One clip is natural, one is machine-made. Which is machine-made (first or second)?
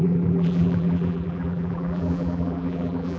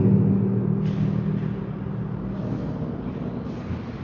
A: first